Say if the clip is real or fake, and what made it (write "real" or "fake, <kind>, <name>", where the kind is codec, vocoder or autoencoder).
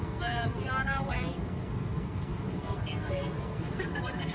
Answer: fake, codec, SNAC